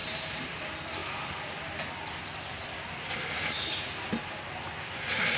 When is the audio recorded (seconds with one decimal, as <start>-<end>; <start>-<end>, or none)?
0.6-1.0; 1.5-5.4